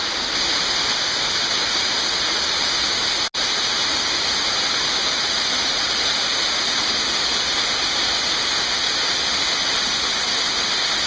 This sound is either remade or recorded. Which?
recorded